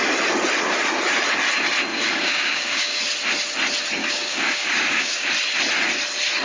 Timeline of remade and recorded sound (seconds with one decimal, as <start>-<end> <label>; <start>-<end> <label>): 0.0-1.9 recorded; 1.9-3.0 remade; 3.0-4.0 recorded; 4.0-5.3 remade; 5.3-6.4 recorded